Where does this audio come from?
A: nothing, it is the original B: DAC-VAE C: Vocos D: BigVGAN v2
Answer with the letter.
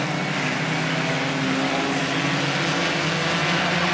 A